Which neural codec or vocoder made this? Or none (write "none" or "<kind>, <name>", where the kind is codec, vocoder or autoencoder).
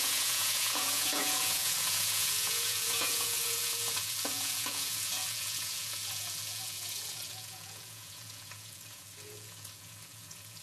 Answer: vocoder, Vocos